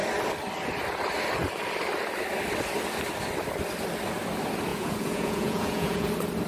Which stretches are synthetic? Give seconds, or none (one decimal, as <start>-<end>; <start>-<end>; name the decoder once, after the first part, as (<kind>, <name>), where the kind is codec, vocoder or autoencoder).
4.7-6.1 (vocoder, Vocos)